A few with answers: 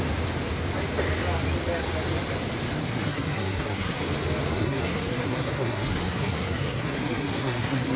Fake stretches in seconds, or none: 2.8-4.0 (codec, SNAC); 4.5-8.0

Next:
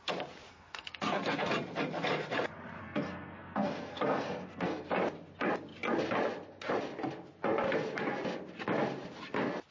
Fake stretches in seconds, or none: 0.5-1.5 (codec, SNAC); 2.8-4.9

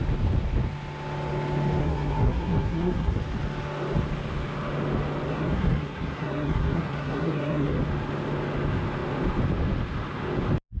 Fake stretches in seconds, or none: 1.8-3.2 (codec, SNAC); 5.3-7.8

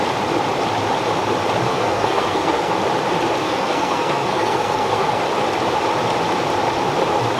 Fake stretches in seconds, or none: 1.7-2.7 (codec, SNAC); 3.4-5.2